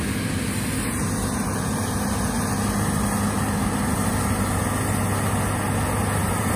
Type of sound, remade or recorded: recorded